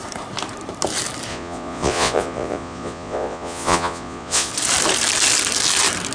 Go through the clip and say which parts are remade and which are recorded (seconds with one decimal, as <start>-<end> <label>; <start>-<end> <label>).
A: 0.0-1.3 recorded; 1.3-4.5 remade; 4.5-6.1 recorded